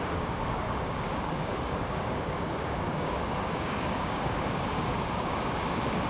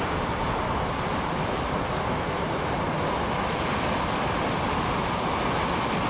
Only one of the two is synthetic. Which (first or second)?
first